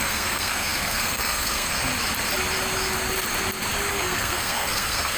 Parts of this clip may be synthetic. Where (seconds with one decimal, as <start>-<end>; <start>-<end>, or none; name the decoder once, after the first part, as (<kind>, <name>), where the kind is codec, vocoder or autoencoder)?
0.0-1.9 (codec, SNAC); 3.9-5.2